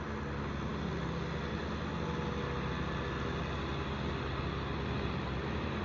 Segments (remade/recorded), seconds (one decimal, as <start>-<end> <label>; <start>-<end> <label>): 0.0-5.8 recorded